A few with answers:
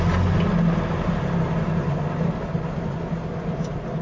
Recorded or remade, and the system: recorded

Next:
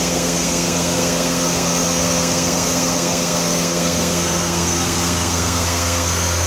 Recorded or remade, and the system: remade, codec, SNAC